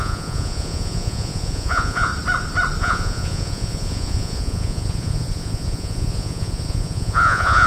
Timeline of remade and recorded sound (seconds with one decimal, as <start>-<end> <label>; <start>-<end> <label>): 0.0-2.1 remade; 2.1-2.8 recorded; 2.8-7.7 remade

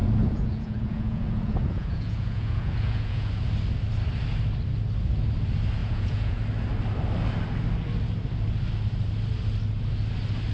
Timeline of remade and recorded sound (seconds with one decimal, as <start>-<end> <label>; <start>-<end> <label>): 0.0-3.3 remade; 3.3-5.8 recorded; 5.8-6.4 remade; 6.4-10.5 recorded

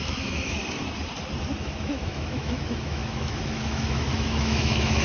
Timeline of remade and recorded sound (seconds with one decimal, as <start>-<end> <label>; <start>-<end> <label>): 0.0-0.6 remade; 0.6-1.6 recorded; 1.6-5.0 remade

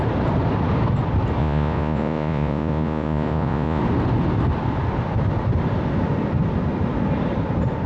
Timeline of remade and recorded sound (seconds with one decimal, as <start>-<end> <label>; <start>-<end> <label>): 0.0-1.4 recorded; 1.4-3.8 remade; 3.8-7.9 recorded

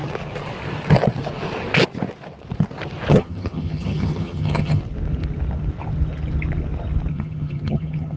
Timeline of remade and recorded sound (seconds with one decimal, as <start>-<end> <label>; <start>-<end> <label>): 0.0-3.1 recorded; 3.1-4.8 remade; 4.8-7.1 recorded; 7.1-8.2 remade

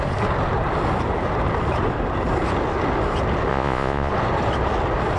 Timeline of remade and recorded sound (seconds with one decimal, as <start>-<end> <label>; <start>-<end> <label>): 0.0-3.5 recorded; 3.5-4.1 remade; 4.1-5.2 recorded